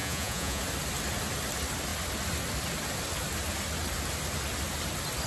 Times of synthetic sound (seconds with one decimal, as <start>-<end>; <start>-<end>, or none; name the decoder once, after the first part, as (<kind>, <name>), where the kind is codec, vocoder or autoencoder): 0.0-0.6 (vocoder, Vocos)